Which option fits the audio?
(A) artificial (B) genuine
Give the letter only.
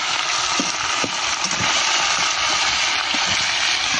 B